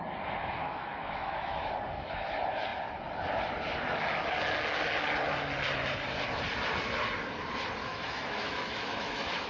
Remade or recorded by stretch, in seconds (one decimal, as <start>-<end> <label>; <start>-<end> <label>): 0.0-0.6 recorded; 0.6-1.6 remade; 1.6-7.8 recorded; 7.8-9.5 remade

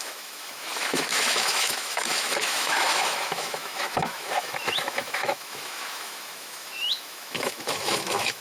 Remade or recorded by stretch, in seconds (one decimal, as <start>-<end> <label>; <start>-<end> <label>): 0.0-8.4 remade

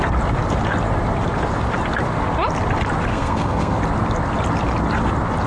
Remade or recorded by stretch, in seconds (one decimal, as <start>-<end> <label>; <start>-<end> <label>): 0.0-3.1 recorded; 3.1-3.8 remade; 3.8-5.5 recorded

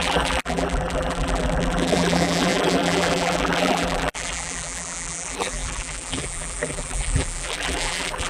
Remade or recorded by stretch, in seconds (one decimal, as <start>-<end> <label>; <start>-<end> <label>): 0.0-8.3 remade